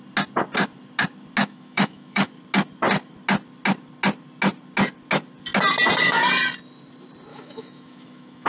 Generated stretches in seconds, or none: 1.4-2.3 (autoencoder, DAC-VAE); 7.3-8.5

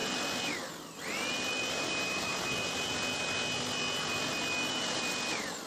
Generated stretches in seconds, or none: 1.7-2.3 (vocoder, BigVGAN v2)

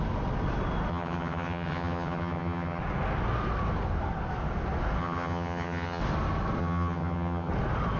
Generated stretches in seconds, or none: 0.9-2.8 (vocoder, HiFi-GAN); 5.0-6.0; 6.6-7.5

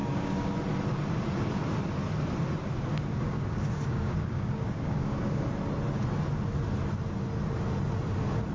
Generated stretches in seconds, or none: 0.0-0.5 (codec, DAC); 3.1-5.5

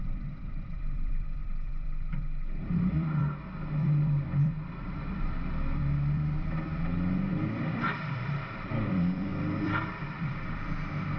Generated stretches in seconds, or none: 0.0-11.2 (vocoder, BigVGAN v2)